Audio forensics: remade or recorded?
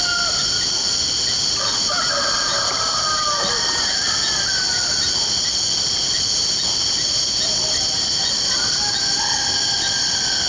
recorded